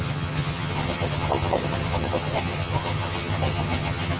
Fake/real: fake